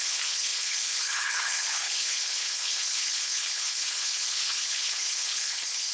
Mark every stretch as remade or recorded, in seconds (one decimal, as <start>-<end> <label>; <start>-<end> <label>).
0.0-5.9 remade